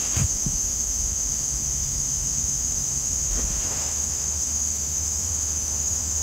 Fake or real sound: fake